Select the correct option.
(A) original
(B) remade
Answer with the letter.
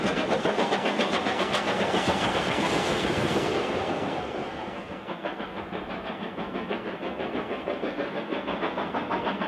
B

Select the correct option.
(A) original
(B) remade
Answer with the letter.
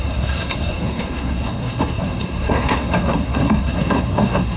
B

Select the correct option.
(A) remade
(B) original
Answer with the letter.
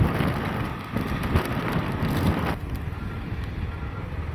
B